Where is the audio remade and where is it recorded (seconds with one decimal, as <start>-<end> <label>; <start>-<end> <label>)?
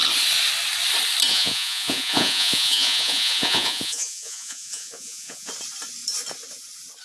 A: 0.0-1.3 recorded; 1.3-5.5 remade; 5.5-7.0 recorded